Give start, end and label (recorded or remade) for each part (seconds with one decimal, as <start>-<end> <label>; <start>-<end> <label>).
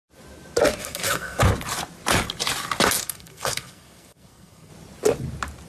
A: 0.0-0.8 recorded; 0.8-1.4 remade; 1.4-3.0 recorded; 3.0-4.7 remade; 4.7-5.7 recorded